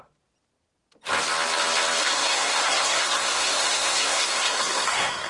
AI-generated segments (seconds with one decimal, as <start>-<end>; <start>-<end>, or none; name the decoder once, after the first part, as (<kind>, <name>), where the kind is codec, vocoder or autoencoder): 2.0-5.3 (codec, SNAC)